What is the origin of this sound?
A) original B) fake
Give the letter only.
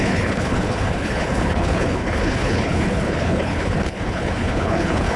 B